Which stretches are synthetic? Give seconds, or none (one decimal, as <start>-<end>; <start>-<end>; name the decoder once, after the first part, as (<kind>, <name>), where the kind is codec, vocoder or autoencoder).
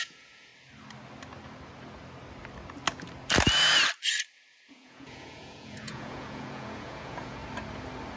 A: 0.0-0.5 (vocoder, Vocos); 4.7-7.4